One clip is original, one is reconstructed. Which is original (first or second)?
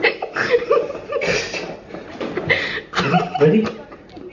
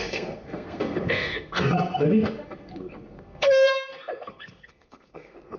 first